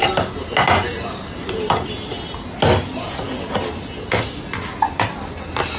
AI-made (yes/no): no